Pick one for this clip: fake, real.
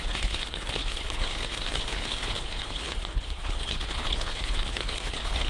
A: fake